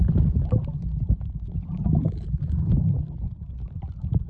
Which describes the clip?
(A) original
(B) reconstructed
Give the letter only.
A